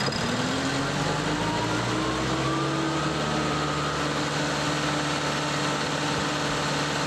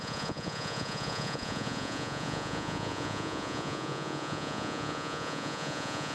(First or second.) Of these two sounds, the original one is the first